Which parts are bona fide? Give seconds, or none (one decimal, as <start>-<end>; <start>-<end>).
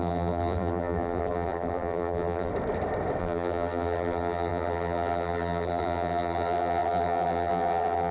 2.5-3.2